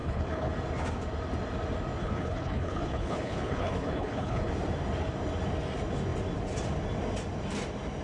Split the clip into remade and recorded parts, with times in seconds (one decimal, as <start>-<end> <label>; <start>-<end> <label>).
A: 0.0-0.5 remade; 0.5-2.0 recorded; 2.0-4.5 remade; 4.5-8.0 recorded